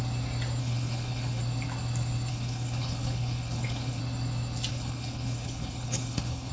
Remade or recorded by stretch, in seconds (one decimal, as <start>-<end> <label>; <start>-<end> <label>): 0.0-0.6 recorded; 0.6-1.4 remade; 1.4-2.3 recorded; 2.3-4.0 remade; 4.0-4.7 recorded; 4.7-6.5 remade